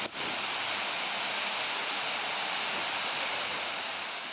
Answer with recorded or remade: recorded